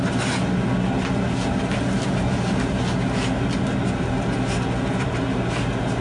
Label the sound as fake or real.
real